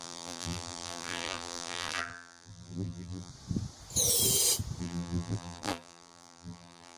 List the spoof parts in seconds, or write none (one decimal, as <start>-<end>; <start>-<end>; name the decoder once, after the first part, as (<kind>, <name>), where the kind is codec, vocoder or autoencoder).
0.0-3.3 (vocoder, BigVGAN v2); 4.8-7.0